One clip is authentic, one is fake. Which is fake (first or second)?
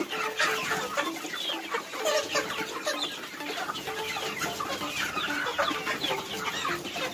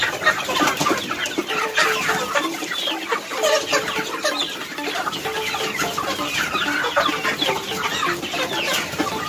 second